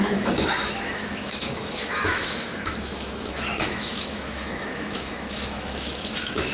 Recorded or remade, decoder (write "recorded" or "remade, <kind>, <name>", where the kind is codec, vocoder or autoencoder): remade, autoencoder, DAC-VAE